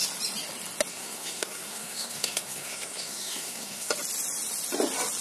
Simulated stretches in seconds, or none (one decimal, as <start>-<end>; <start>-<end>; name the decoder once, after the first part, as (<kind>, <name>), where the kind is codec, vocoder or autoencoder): 0.9-3.9 (codec, SNAC)

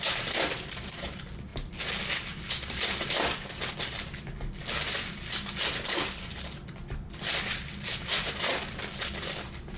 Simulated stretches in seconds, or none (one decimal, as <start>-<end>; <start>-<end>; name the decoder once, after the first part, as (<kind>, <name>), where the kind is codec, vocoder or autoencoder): none

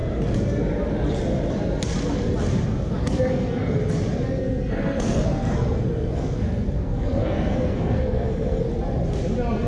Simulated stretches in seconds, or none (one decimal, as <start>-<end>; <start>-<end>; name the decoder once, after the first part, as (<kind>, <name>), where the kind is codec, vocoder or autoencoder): 3.0-3.8 (codec, SNAC); 4.4-8.7